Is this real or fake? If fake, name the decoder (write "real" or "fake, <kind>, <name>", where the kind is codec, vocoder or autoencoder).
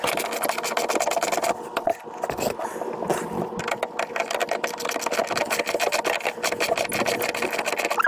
real